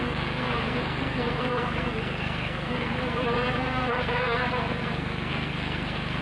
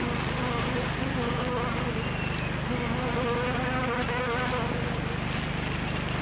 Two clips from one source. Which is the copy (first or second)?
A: first